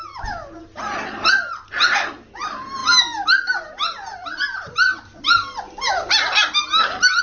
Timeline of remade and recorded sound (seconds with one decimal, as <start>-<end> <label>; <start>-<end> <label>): 0.0-7.2 recorded